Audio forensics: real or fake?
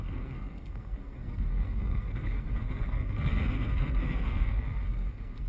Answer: fake